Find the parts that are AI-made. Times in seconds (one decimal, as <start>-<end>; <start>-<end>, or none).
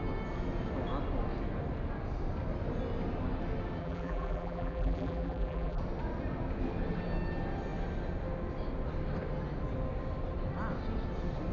3.8-5.8